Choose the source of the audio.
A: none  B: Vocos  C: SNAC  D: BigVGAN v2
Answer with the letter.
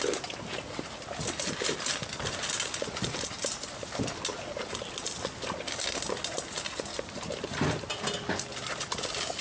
A